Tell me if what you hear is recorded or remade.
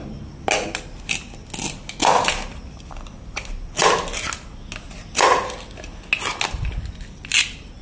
recorded